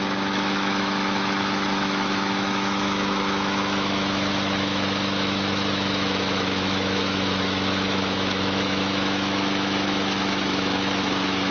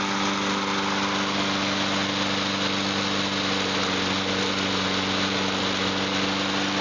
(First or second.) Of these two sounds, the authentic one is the second